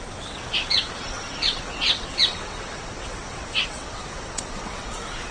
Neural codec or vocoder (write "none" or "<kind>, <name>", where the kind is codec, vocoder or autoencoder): vocoder, WaveNeXt